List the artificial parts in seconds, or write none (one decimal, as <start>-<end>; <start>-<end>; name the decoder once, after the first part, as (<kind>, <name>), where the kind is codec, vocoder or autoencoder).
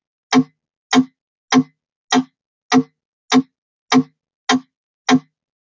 none